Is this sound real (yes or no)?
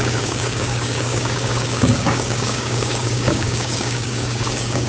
no